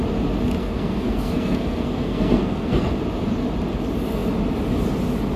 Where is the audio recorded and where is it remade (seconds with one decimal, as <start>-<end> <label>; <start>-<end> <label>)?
0.0-0.6 recorded; 0.6-2.9 remade; 2.9-5.4 recorded